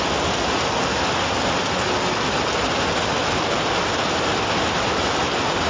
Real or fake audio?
real